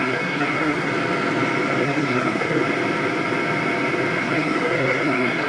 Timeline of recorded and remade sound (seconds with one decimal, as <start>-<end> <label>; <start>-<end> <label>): 0.0-0.9 remade; 0.9-1.8 recorded; 1.8-2.6 remade; 2.6-4.2 recorded; 4.2-5.5 remade